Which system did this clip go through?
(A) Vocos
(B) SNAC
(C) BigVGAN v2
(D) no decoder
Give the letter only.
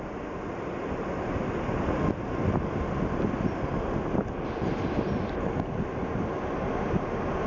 D